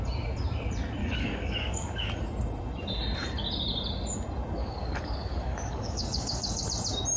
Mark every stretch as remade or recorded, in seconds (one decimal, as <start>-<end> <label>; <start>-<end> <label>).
0.0-1.0 recorded; 1.0-2.2 remade; 2.2-4.6 recorded; 4.6-6.6 remade; 6.6-7.2 recorded